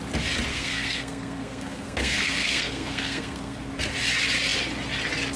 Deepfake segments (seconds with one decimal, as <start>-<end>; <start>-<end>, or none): 0.5-3.7